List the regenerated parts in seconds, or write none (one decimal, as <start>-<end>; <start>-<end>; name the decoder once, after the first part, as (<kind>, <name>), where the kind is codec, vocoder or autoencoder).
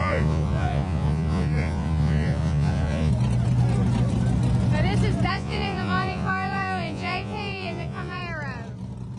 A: 0.0-3.1 (vocoder, Vocos); 5.3-8.2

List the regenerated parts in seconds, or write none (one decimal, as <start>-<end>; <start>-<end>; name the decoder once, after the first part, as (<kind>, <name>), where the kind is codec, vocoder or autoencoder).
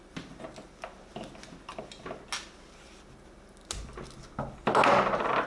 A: none